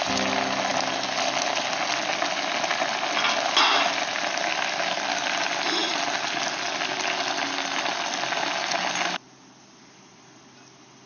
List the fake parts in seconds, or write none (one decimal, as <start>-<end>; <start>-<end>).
none